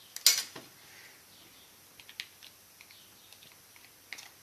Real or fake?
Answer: real